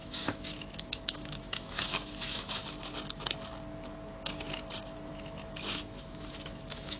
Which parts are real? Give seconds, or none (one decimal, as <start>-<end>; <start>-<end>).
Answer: 2.6-5.1